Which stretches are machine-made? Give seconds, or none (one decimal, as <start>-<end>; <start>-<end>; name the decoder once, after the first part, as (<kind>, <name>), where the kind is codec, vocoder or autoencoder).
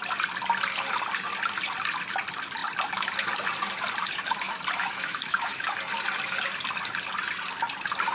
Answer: 4.8-5.8 (autoencoder, DAC-VAE)